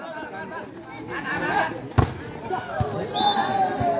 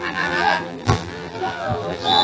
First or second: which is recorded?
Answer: first